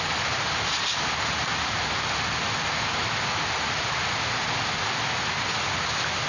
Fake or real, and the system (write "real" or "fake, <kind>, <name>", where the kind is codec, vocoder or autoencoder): real